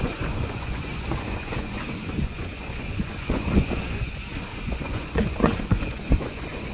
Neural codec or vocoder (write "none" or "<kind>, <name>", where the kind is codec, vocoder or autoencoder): vocoder, Vocos